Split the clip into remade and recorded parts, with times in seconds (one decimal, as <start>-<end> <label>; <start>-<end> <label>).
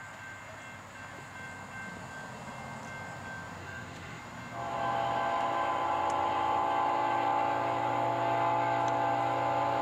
0.0-3.6 recorded; 3.6-4.2 remade; 4.2-9.8 recorded